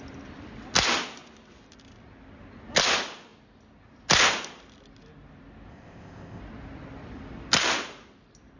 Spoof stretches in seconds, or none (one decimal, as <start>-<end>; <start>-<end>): 5.7-6.4